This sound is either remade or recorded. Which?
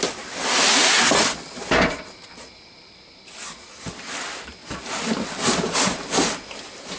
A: recorded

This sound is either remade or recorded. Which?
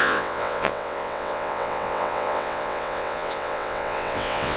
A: remade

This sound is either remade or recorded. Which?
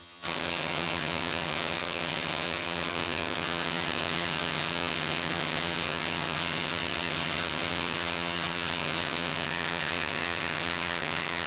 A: remade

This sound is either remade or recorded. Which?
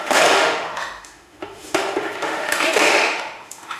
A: remade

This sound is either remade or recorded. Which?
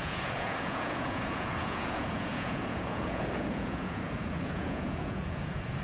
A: remade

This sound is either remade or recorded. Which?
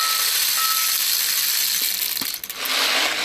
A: recorded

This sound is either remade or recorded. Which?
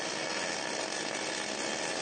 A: recorded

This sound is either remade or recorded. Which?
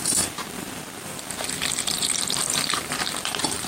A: remade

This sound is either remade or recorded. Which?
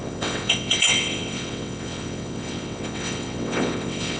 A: remade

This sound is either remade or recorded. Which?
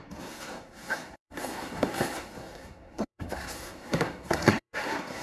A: remade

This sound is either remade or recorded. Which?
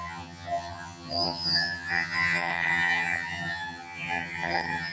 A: remade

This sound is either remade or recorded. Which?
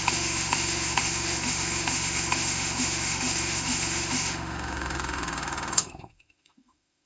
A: remade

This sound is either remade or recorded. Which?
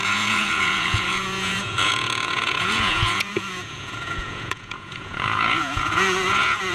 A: remade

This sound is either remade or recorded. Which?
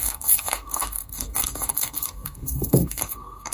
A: remade